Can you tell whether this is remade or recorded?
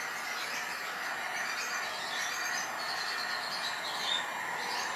recorded